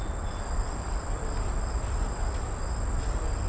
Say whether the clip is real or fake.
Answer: real